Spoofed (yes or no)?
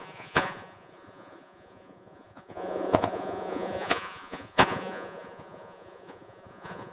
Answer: yes